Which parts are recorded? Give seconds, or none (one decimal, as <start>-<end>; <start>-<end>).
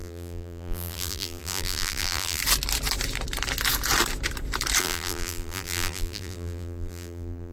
2.4-4.8